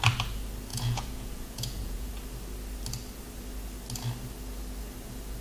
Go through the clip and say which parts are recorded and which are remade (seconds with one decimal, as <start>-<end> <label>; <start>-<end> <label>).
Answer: 0.0-0.7 recorded; 0.7-2.1 remade; 2.1-5.4 recorded